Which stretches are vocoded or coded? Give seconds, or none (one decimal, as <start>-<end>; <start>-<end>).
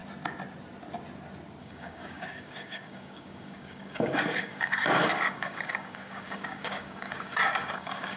1.6-8.2